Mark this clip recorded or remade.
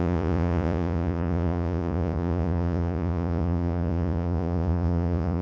remade